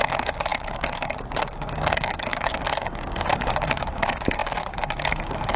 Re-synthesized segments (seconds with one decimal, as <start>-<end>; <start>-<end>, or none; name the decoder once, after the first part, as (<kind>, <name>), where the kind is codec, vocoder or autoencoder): 0.0-5.6 (codec, DAC)